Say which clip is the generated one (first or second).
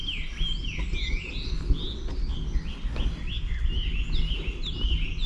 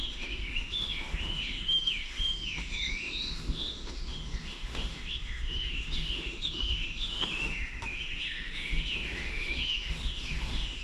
second